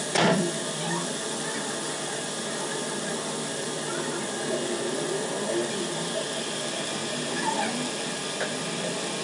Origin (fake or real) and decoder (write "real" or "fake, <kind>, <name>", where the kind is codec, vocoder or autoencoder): real